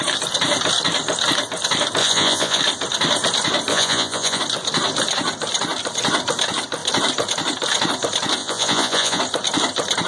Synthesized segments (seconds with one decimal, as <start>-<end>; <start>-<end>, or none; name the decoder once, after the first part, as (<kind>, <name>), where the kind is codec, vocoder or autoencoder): 2.0-2.6 (vocoder, Vocos); 3.7-4.4; 8.4-9.2